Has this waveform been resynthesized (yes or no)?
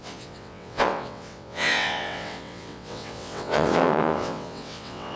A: yes